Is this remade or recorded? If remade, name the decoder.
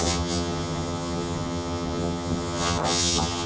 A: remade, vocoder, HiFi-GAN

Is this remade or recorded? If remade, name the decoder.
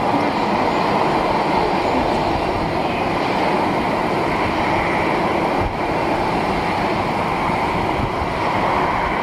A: recorded